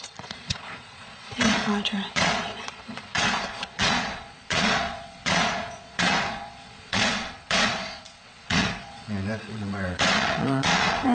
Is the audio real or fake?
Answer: fake